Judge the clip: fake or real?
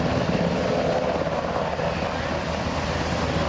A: real